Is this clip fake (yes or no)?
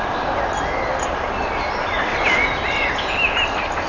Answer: no